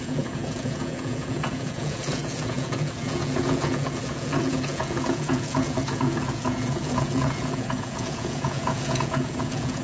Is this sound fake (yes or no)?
yes